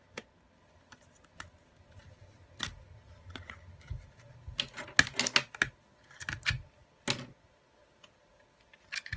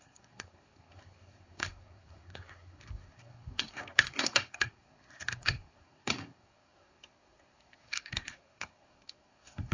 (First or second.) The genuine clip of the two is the first